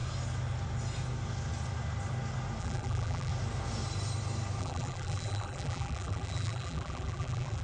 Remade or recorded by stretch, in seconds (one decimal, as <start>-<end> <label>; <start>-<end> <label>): 0.0-2.6 recorded; 2.6-3.3 remade; 3.3-4.6 recorded; 4.6-7.6 remade